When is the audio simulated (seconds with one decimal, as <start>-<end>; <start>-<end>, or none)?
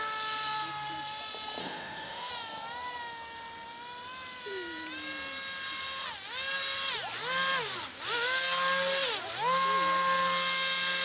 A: 1.6-2.3